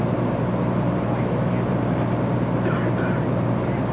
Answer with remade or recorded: recorded